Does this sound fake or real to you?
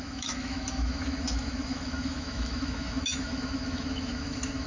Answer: fake